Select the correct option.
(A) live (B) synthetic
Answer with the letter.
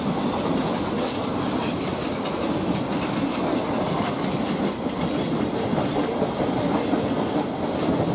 A